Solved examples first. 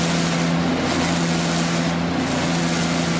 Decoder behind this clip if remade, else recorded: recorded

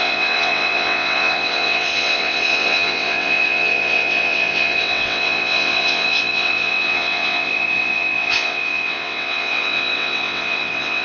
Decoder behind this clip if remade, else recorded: remade, vocoder, WaveNeXt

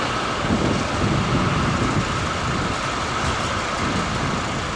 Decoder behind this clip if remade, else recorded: recorded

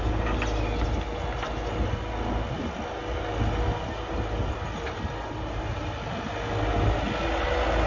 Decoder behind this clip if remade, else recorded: recorded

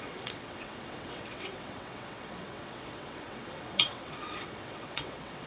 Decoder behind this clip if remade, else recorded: remade, vocoder, WaveNeXt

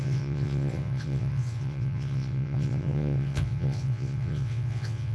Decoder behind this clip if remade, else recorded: remade, vocoder, WaveNeXt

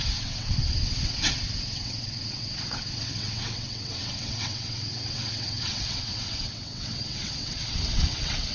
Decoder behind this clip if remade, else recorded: remade, vocoder, WaveNeXt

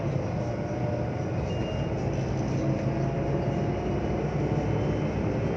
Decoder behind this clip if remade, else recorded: recorded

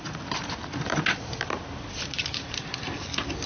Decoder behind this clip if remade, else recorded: recorded